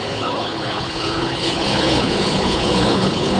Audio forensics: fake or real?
fake